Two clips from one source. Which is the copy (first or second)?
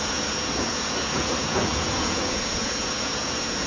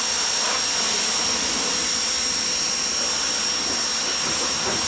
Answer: first